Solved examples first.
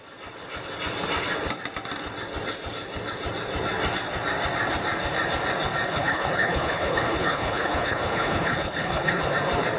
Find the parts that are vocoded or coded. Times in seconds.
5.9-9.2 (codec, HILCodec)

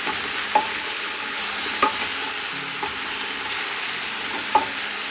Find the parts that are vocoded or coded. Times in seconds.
0.7-1.4 (codec, HILCodec)

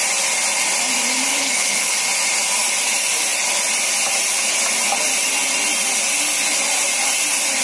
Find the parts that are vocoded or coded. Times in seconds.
1.3-2.0 (codec, HILCodec)

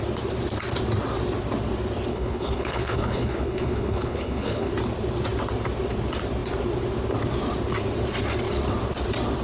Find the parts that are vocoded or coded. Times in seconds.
2.1-4.7 (codec, HILCodec)

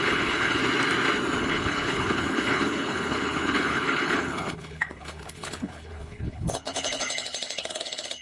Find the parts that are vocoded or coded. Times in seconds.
0.0-0.6 (codec, HILCodec); 1.4-8.2

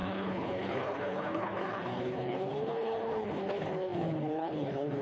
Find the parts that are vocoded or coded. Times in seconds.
0.0-5.0 (codec, HILCodec)

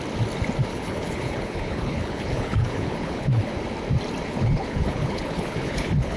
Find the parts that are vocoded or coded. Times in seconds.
0.7-3.5 (codec, HILCodec); 4.3-6.2

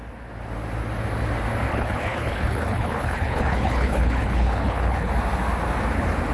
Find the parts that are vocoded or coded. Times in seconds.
1.7-5.1 (codec, HILCodec)